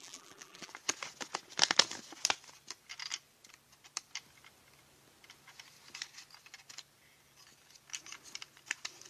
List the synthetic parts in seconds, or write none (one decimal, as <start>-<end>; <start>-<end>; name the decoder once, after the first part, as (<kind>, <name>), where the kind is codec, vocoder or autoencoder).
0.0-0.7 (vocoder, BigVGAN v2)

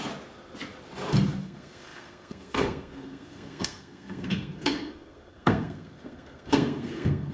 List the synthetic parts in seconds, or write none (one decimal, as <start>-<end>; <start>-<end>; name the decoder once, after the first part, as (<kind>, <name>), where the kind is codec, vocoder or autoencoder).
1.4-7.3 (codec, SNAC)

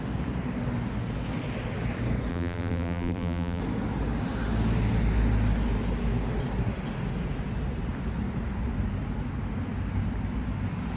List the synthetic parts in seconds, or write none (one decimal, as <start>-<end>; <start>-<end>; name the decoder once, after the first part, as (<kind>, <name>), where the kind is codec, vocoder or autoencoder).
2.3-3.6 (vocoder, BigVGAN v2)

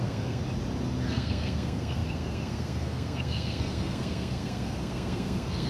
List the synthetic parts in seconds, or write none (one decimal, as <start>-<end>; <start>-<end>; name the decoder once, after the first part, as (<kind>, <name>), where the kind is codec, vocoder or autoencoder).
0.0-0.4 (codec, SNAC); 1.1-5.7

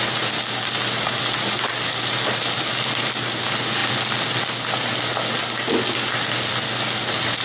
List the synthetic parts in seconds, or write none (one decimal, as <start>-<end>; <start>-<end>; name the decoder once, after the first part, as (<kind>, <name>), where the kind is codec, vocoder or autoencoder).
none

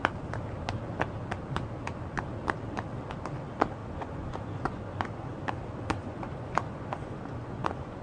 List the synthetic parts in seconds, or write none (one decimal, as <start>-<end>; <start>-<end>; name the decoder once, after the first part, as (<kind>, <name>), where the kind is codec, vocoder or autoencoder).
3.8-5.4 (vocoder, Vocos); 6.0-8.0

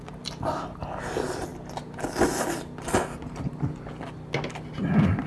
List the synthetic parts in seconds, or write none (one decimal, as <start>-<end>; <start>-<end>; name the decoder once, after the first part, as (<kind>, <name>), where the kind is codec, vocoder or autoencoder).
none